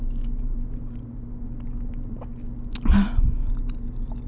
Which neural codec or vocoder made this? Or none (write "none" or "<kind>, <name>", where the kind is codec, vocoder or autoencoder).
none